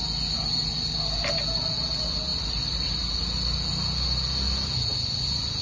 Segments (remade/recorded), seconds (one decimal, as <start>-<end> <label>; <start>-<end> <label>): 0.0-2.3 recorded; 2.3-3.1 remade; 3.1-5.6 recorded